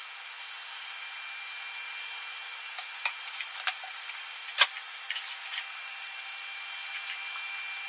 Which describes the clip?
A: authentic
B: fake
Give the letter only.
A